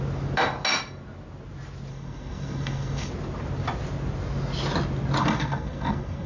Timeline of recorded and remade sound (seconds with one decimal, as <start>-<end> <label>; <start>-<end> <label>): 0.0-1.9 recorded; 1.9-3.1 remade; 3.1-5.2 recorded; 5.2-6.3 remade